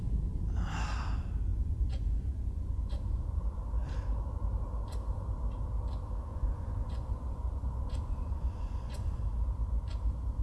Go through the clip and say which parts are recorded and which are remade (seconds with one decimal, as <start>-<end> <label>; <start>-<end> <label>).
0.0-1.5 recorded; 1.5-3.4 remade; 3.4-6.3 recorded; 6.3-9.2 remade; 9.2-10.4 recorded